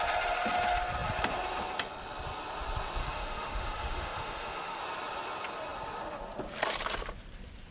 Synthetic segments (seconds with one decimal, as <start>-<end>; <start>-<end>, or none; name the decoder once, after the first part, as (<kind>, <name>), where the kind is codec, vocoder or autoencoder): 3.0-4.8 (autoencoder, DAC-VAE)